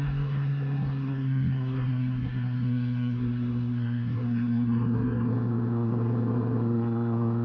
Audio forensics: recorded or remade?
remade